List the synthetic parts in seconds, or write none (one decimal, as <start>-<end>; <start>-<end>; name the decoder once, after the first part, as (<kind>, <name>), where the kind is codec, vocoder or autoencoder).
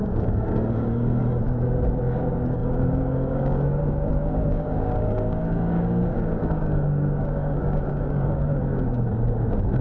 0.0-1.2 (codec, DAC); 2.0-9.8